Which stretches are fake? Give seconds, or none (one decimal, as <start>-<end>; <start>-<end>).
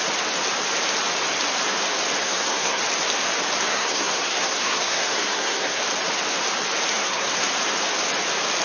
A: 2.2-2.8; 3.7-5.8; 6.9-7.5